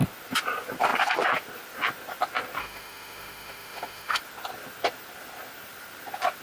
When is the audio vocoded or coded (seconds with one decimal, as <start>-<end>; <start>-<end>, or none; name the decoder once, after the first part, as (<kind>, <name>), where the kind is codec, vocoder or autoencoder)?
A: 2.6-4.2 (autoencoder, DAC-VAE)